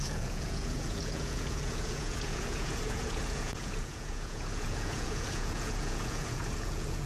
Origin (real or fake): fake